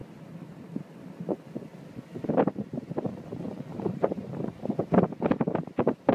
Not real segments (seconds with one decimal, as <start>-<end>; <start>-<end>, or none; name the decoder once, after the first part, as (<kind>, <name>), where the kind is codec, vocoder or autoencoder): 3.7-6.1 (vocoder, BigVGAN v2)